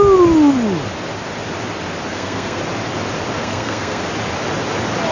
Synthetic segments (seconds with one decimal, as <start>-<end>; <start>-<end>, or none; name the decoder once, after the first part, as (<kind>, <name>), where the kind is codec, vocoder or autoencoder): 2.1-2.6 (codec, SNAC); 3.4-4.0